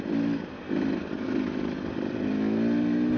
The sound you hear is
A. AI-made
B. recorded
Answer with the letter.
B